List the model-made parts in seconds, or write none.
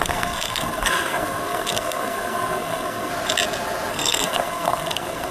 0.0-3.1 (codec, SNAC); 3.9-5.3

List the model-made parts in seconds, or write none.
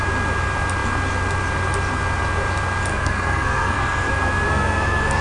2.9-4.1 (codec, SNAC); 4.5-5.2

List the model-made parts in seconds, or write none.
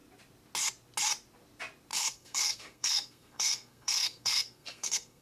1.9-5.2 (codec, SNAC)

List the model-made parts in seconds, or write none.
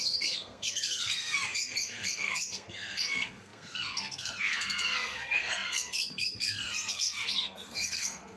0.0-8.4 (codec, SNAC)